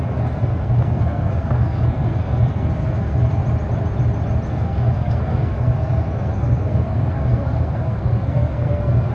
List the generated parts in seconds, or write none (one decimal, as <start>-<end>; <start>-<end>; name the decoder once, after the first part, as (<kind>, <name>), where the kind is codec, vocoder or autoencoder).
0.0-3.4 (codec, SNAC); 4.5-9.1